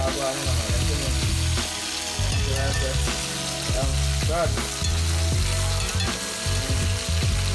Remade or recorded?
recorded